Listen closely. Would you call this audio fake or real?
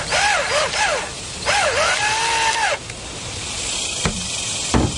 real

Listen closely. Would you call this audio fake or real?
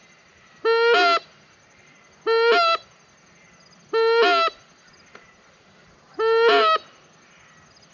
real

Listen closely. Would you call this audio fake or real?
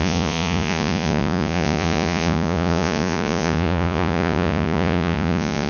fake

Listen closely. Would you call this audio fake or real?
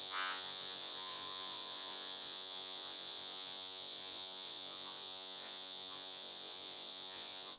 fake